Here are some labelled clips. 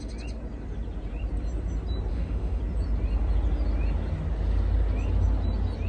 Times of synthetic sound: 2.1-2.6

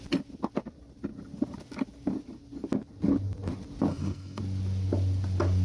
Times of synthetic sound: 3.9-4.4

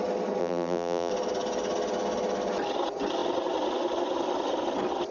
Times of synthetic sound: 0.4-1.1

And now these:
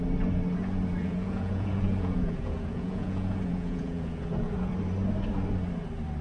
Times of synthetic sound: 1.0-4.7